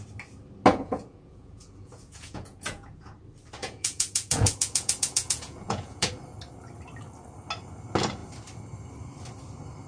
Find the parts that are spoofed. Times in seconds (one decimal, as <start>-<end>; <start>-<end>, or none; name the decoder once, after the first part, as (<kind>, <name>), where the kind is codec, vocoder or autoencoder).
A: 0.7-3.1 (vocoder, Vocos); 3.6-6.1